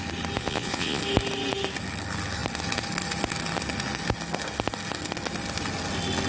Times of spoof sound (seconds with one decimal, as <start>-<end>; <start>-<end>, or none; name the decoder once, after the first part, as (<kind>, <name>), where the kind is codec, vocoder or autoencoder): 0.4-1.0 (vocoder, Vocos)